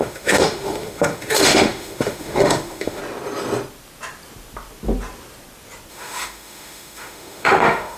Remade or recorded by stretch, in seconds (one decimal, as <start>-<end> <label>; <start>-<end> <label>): 0.0-3.0 remade; 3.0-5.9 recorded; 5.9-8.0 remade